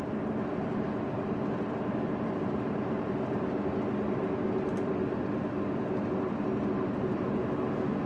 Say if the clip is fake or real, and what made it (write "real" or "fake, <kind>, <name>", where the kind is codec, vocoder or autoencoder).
real